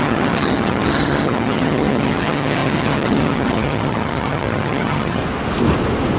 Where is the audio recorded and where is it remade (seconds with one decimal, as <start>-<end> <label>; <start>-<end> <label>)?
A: 0.0-5.2 remade; 5.2-6.2 recorded